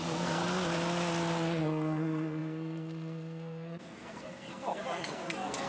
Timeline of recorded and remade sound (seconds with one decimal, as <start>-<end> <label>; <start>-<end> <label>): 0.0-0.4 remade; 0.4-1.6 recorded; 1.6-5.7 remade